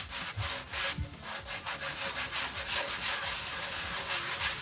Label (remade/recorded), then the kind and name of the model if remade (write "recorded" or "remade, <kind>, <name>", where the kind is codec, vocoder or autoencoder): recorded